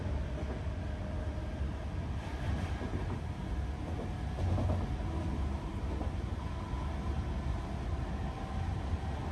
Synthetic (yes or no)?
no